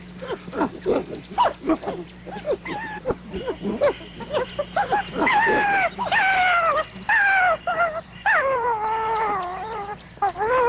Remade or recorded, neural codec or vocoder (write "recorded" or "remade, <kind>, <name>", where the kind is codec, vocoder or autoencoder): remade, vocoder, BigVGAN v2